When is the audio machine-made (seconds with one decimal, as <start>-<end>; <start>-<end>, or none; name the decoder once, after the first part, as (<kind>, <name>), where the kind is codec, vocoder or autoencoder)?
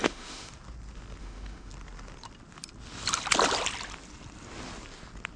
0.0-0.5 (autoencoder, DAC-VAE); 1.2-1.7